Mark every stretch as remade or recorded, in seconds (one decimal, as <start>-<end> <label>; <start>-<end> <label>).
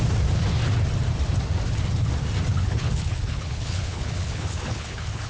0.0-2.5 recorded; 2.5-5.3 remade